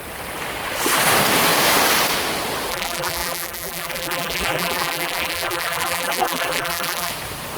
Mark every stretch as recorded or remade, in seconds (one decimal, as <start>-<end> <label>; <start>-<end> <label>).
0.0-2.7 recorded; 2.7-7.1 remade; 7.1-7.6 recorded